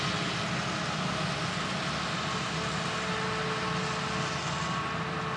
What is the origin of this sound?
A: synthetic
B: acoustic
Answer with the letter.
B